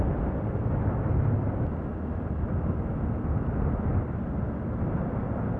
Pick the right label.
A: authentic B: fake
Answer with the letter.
A